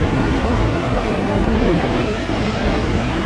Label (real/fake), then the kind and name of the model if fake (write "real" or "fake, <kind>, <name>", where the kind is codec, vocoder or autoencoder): fake, codec, SNAC